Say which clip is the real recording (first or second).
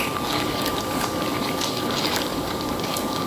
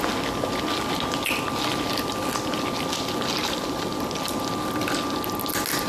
second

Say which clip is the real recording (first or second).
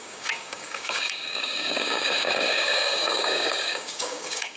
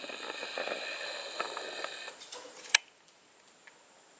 second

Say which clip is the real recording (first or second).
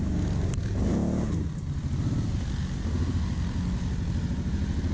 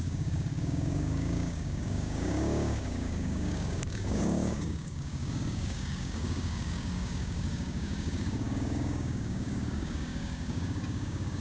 first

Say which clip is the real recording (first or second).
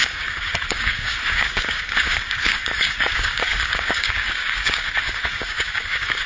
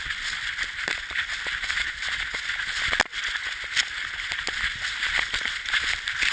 second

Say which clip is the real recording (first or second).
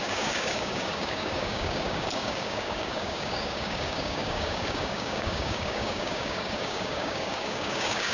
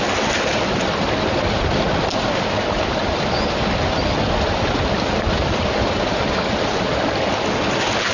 second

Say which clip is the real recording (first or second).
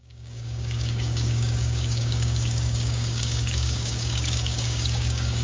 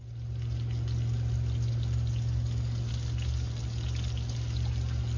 second